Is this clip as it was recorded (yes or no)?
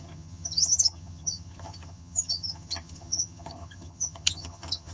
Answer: no